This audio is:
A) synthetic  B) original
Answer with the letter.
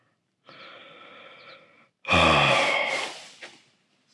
B